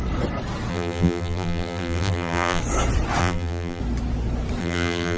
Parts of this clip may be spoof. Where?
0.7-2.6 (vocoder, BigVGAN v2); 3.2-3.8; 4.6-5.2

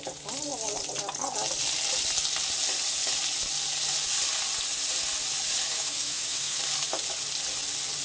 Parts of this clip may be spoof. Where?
5.7-6.6 (autoencoder, DAC-VAE)